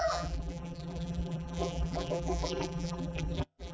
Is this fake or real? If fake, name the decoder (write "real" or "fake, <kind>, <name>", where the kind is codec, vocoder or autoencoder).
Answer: fake, vocoder, BigVGAN v2